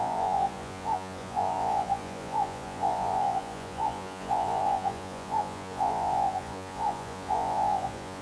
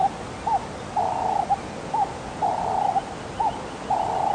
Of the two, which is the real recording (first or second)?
second